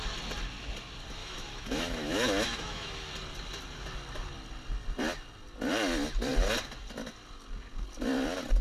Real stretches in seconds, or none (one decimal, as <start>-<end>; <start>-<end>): 0.0-1.2; 3.1-8.6